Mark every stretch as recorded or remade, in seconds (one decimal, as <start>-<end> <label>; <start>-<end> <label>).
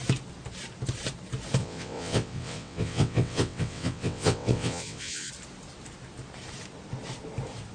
0.0-1.6 recorded; 1.6-5.3 remade; 5.3-7.7 recorded